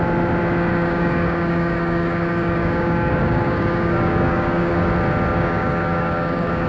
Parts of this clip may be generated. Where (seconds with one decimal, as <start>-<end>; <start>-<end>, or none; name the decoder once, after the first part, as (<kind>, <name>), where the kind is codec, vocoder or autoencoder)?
0.7-4.7 (codec, DAC); 5.3-6.7